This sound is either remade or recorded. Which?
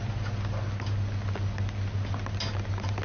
recorded